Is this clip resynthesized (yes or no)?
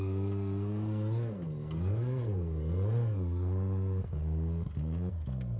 yes